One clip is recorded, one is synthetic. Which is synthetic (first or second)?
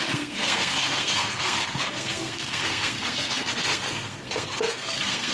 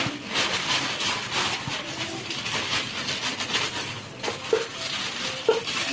first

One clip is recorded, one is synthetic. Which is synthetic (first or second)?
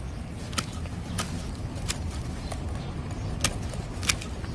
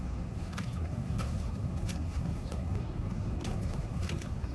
second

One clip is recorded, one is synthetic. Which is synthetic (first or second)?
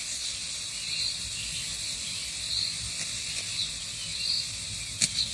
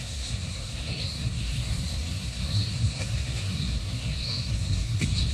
second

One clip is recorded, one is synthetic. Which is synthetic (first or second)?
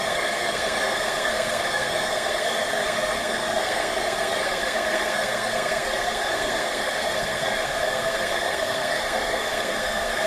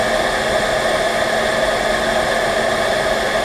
first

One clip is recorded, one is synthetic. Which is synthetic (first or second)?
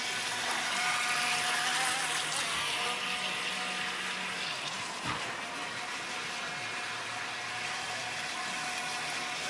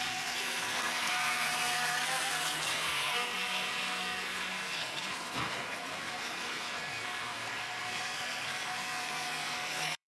second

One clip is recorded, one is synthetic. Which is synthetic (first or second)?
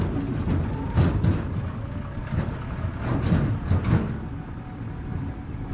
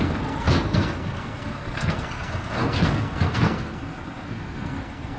second